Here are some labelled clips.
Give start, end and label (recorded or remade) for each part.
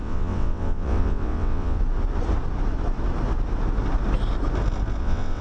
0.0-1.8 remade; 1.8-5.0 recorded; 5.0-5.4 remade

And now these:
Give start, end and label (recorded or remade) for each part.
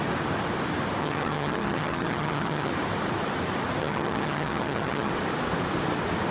0.0-1.0 recorded; 1.0-2.7 remade; 2.7-3.8 recorded; 3.8-5.1 remade; 5.1-6.3 recorded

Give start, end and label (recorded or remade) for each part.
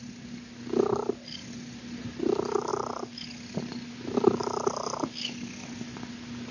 0.0-6.5 recorded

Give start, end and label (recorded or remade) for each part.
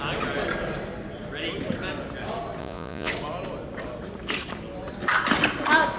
0.0-2.6 recorded; 2.6-3.1 remade; 3.1-6.0 recorded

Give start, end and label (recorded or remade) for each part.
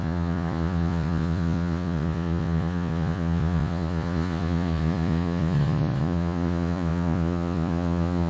0.0-8.3 remade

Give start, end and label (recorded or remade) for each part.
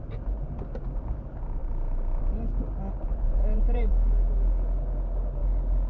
0.0-3.1 recorded; 3.1-3.9 remade; 3.9-5.9 recorded